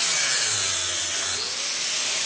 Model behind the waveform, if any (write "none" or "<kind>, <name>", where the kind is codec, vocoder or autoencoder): none